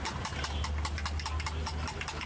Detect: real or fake real